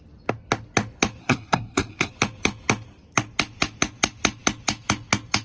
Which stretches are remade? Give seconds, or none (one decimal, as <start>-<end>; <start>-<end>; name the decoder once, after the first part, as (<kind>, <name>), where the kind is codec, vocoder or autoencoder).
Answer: 1.2-2.1 (codec, SNAC)